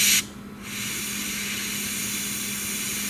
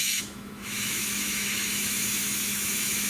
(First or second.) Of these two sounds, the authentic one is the first